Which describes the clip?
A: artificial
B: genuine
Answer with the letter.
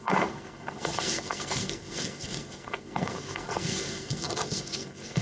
A